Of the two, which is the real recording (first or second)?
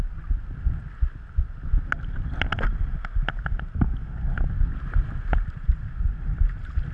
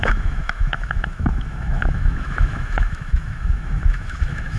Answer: first